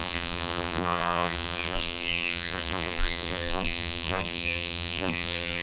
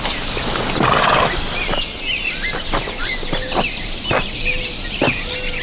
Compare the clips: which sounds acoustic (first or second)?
second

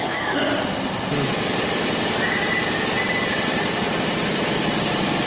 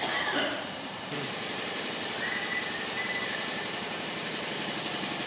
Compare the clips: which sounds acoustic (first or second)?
first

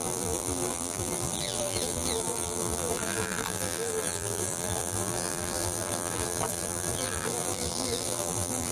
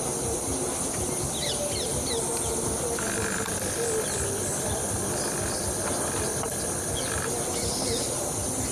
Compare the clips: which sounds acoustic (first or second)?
second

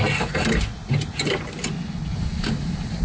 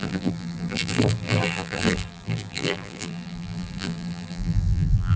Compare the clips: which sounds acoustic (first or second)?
first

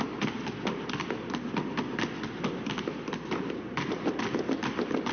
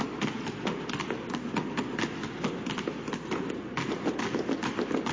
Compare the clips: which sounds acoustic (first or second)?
second